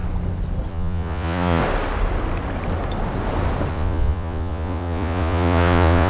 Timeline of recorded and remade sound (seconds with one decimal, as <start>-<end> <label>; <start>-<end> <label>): 0.0-0.7 recorded; 0.7-1.6 remade; 1.6-3.7 recorded; 3.7-6.1 remade